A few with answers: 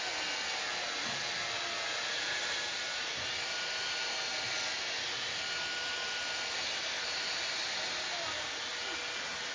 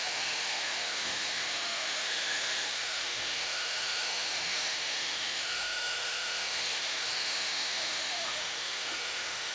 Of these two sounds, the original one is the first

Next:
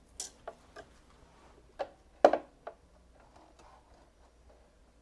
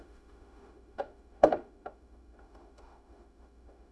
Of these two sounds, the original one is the first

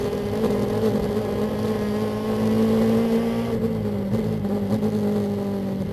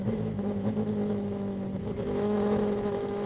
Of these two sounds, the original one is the first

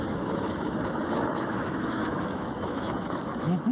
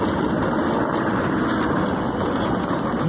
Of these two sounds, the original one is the second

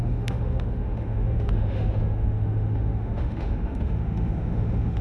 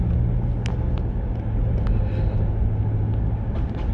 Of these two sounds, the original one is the second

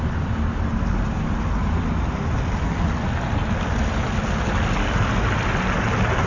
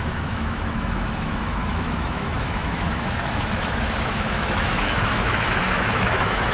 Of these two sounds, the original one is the first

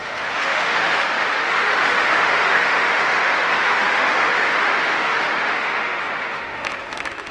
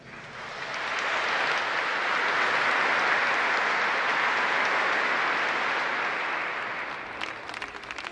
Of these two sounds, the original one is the second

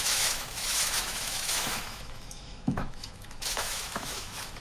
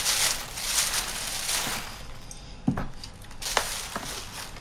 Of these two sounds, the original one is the second